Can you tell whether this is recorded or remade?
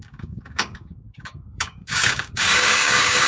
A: remade